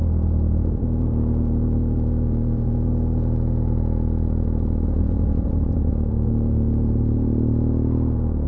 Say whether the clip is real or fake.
fake